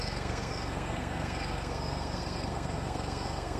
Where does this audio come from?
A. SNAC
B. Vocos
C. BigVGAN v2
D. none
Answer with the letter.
A